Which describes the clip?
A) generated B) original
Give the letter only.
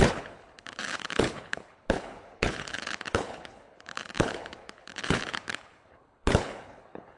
A